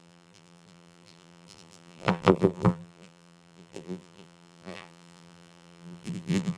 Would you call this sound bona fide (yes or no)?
no